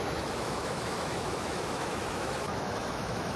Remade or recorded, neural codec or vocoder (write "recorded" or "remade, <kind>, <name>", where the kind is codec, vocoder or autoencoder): remade, autoencoder, DAC-VAE